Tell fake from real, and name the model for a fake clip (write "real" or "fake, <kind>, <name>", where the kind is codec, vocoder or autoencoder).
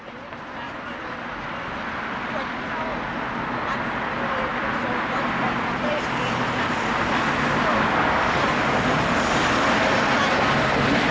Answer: real